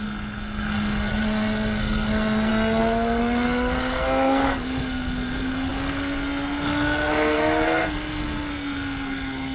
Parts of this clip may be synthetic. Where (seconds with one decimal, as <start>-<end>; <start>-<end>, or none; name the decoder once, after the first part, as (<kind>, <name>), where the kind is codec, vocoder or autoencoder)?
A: 0.0-9.5 (codec, SNAC)